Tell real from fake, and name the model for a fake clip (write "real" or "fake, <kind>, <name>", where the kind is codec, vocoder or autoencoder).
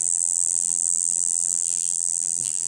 fake, vocoder, BigVGAN v2